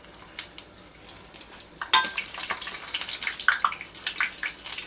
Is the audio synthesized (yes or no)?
no